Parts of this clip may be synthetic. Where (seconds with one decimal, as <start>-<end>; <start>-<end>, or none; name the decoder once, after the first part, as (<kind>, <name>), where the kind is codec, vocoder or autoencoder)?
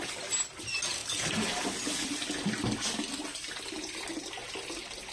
none